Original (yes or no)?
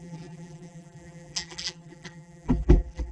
no